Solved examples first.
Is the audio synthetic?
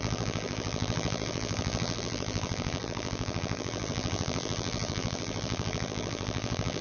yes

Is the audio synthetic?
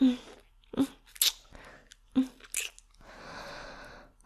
no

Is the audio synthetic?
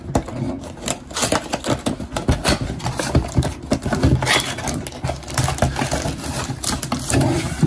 no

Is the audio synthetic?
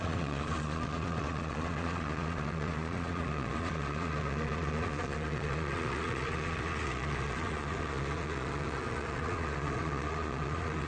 yes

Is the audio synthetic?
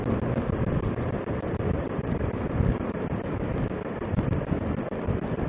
no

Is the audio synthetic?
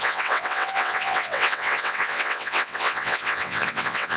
yes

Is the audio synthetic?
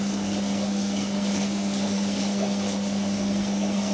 yes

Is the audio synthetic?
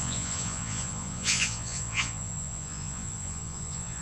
yes